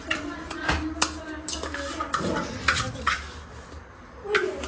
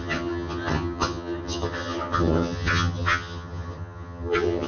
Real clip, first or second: first